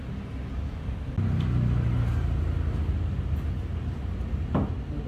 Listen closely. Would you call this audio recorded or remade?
recorded